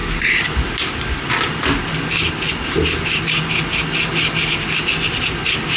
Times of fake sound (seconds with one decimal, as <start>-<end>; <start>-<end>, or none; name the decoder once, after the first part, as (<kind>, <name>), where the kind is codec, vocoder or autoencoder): none